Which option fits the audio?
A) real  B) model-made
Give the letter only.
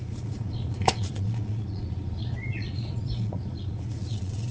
B